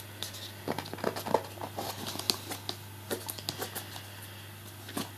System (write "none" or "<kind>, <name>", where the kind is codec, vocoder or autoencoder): none